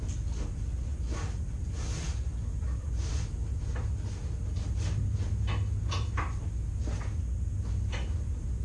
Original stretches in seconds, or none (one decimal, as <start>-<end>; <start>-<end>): 0.0-8.6